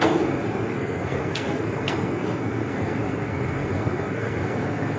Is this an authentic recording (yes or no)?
no